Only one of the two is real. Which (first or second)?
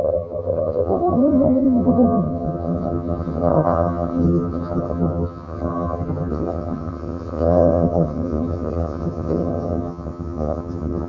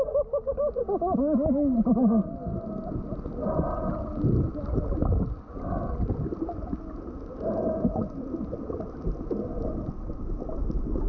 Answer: second